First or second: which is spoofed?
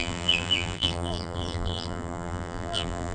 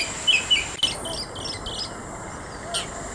first